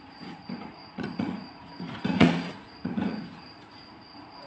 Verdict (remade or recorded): remade